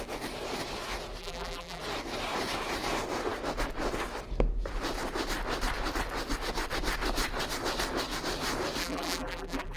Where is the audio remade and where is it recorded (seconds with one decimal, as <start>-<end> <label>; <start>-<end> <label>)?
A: 0.0-1.2 recorded; 1.2-1.8 remade; 1.8-8.8 recorded; 8.8-9.8 remade